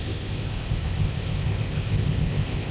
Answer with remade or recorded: remade